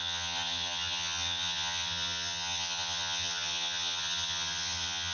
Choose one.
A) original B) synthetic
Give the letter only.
B